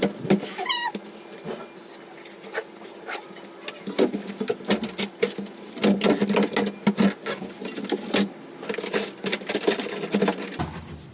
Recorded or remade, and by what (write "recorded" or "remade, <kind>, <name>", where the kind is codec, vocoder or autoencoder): recorded